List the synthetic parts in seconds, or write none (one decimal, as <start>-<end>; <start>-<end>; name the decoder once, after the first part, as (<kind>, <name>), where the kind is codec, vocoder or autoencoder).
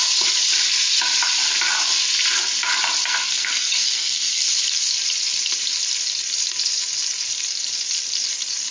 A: 3.0-4.5 (codec, SNAC)